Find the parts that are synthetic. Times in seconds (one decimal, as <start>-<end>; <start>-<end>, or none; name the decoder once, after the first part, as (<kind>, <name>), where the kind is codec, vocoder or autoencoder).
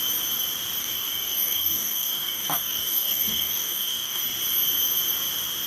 0.8-4.2 (codec, DAC)